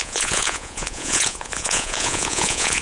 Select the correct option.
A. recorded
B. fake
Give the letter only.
B